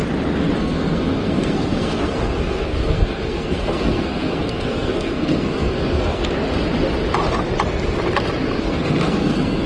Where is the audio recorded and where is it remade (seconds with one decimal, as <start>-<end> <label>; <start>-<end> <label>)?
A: 0.0-0.6 recorded; 0.6-6.2 remade; 6.2-8.6 recorded; 8.6-9.7 remade